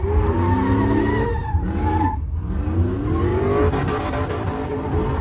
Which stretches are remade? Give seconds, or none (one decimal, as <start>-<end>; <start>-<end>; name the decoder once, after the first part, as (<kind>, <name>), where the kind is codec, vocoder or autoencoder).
none